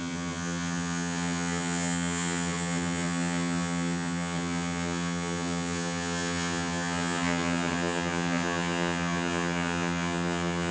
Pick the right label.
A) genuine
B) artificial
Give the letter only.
B